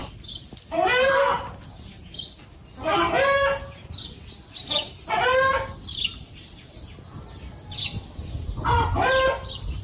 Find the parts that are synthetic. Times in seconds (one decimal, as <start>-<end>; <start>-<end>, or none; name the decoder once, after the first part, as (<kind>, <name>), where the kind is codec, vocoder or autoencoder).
none